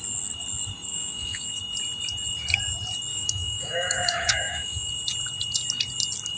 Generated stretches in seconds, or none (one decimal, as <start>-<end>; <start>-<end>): 0.9-1.6; 3.1-4.9